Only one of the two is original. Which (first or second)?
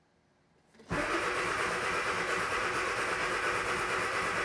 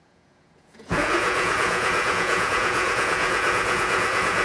first